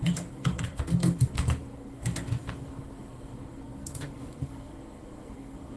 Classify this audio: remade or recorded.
remade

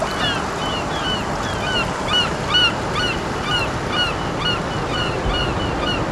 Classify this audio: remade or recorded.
recorded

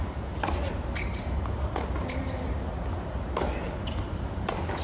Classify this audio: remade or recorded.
recorded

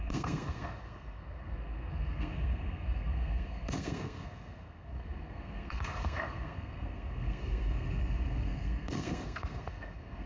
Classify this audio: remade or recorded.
remade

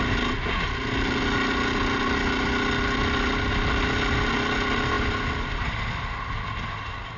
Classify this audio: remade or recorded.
recorded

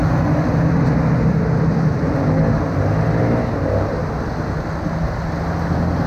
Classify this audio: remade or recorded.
recorded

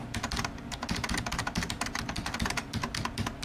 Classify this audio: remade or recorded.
recorded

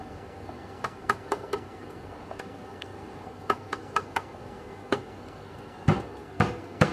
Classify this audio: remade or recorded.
remade